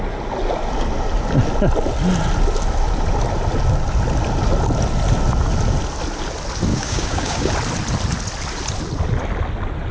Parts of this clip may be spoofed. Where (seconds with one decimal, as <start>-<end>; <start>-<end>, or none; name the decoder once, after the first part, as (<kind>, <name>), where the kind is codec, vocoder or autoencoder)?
6.7-7.5 (codec, DAC)